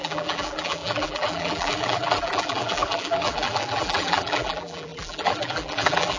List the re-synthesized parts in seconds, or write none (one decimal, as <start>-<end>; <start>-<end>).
0.0-6.2